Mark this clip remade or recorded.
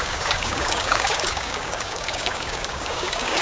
remade